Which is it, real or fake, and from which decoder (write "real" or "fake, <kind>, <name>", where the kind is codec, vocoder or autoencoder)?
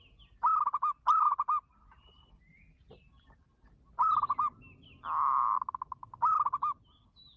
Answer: real